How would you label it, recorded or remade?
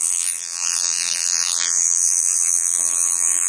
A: remade